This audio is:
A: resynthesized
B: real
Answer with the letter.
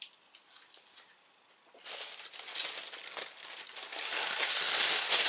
B